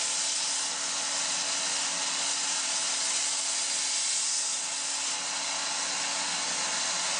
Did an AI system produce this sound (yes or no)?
no